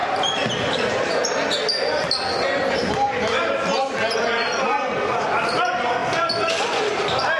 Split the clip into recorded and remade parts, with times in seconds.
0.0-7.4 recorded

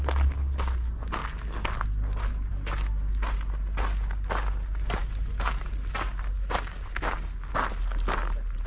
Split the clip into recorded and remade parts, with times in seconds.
0.0-8.7 recorded

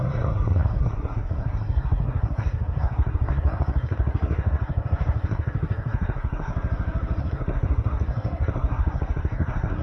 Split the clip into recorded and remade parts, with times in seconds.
0.0-6.5 remade; 6.5-7.2 recorded; 7.2-9.8 remade